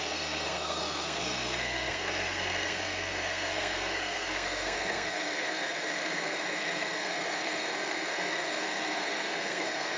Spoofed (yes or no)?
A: yes